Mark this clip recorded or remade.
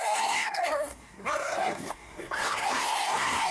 remade